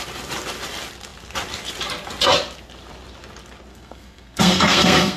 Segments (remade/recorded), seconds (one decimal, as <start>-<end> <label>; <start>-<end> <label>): 0.0-3.7 recorded; 3.7-5.2 remade